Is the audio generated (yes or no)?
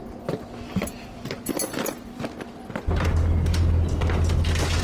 no